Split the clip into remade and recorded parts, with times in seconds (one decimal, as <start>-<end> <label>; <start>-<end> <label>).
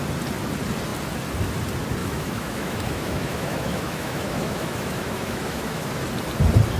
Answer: 0.0-2.0 recorded; 2.0-5.9 remade; 5.9-6.8 recorded